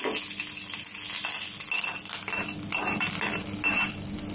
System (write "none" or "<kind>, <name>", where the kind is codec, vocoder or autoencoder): none